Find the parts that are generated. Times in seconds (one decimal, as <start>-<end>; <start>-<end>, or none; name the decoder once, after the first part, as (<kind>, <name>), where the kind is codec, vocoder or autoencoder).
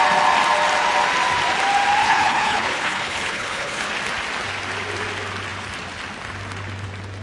2.0-3.9 (codec, HILCodec)